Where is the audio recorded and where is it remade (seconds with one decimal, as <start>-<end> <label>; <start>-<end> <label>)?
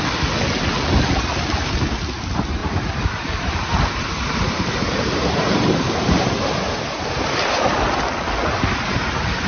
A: 0.0-2.6 recorded; 2.6-7.1 remade; 7.1-9.5 recorded